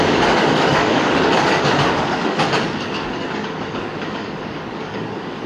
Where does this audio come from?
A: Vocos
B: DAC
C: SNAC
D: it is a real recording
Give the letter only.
B